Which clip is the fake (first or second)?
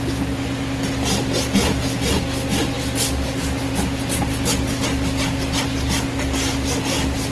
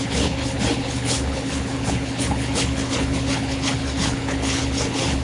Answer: second